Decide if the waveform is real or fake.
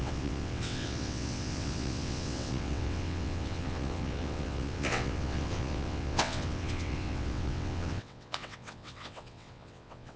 fake